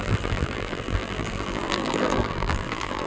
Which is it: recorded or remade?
remade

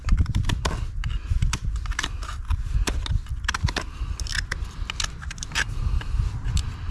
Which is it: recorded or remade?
recorded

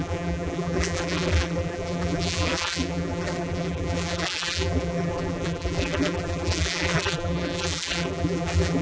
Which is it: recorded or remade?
remade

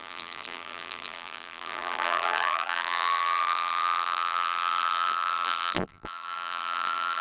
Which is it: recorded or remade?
remade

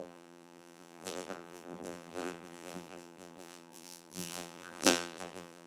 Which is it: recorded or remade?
remade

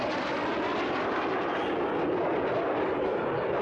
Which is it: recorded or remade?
remade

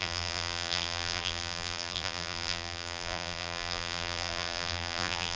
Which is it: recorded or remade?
remade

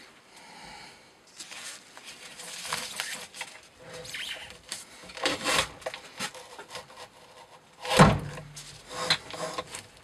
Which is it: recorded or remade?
recorded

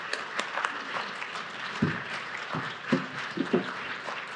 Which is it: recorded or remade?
remade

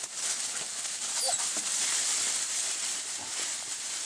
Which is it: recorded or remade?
remade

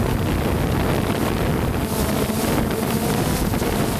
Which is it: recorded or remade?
recorded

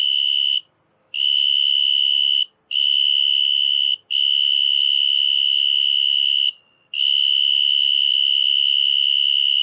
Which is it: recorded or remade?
recorded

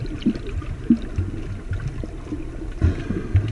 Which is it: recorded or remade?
recorded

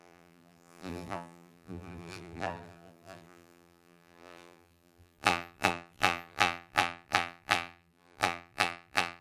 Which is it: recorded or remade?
remade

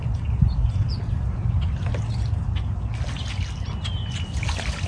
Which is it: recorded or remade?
recorded